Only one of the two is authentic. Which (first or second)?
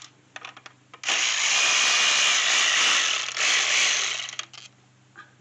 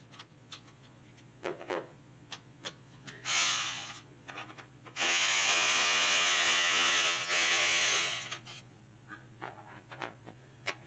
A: first